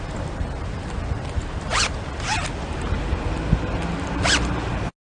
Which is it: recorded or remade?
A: recorded